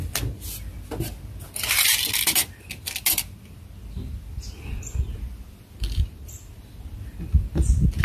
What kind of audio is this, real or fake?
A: real